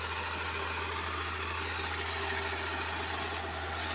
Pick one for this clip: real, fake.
real